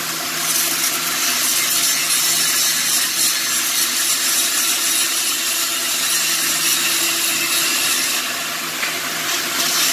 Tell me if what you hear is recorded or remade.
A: recorded